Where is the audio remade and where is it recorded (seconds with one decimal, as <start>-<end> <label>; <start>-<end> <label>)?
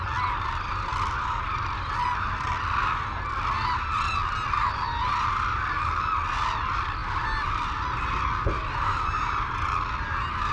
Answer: 0.0-10.5 recorded